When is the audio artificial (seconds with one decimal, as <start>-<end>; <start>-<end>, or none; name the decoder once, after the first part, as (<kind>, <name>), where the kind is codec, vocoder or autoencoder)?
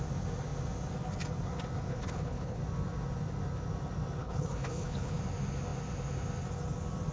1.9-2.6 (codec, HILCodec); 4.2-5.2